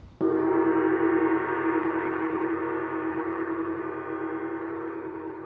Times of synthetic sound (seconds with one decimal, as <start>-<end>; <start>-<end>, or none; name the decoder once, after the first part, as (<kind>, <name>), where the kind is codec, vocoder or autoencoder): 1.8-2.6 (codec, HILCodec); 3.1-3.8; 4.6-5.5